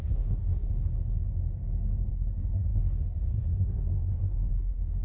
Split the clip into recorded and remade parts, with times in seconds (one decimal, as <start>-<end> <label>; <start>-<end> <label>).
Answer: 0.0-0.7 remade; 0.7-2.1 recorded; 2.1-5.0 remade